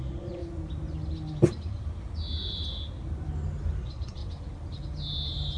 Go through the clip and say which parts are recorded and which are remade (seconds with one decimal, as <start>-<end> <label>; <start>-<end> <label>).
0.0-0.4 remade; 0.4-3.8 recorded; 3.8-4.2 remade; 4.2-5.6 recorded